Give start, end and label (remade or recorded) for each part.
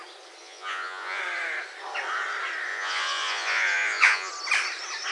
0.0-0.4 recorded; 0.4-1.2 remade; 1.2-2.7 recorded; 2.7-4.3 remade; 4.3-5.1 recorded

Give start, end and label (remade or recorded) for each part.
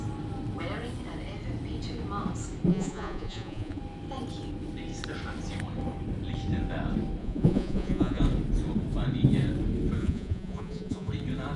0.0-2.7 recorded; 2.7-3.8 remade; 3.8-7.2 recorded; 7.2-8.2 remade; 8.2-10.0 recorded; 10.0-11.1 remade; 11.1-11.6 recorded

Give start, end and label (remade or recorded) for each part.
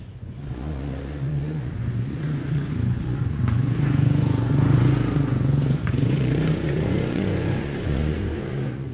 0.0-8.9 remade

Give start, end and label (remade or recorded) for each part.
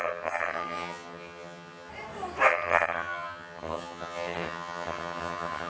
0.0-1.9 remade; 1.9-2.5 recorded; 2.5-5.7 remade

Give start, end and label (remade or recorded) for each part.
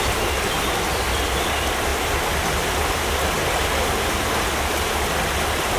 0.0-5.8 recorded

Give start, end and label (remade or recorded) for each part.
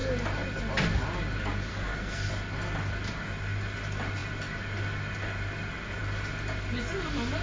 0.0-1.7 recorded; 1.7-2.3 remade; 2.3-7.4 recorded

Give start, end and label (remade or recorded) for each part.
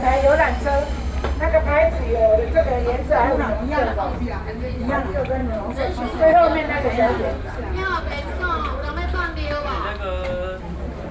0.0-11.1 recorded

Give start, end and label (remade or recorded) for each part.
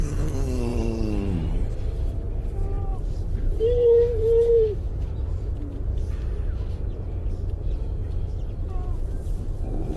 0.0-0.7 recorded; 0.7-1.8 remade; 1.8-2.9 recorded; 2.9-3.4 remade; 3.4-4.1 recorded; 4.1-5.2 remade; 5.2-8.0 recorded; 8.0-9.6 remade; 9.6-10.0 recorded